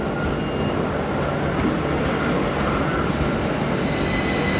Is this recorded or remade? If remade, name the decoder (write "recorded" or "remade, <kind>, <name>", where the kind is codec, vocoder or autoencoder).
recorded